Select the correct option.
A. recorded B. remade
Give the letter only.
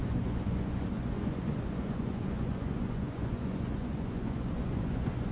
B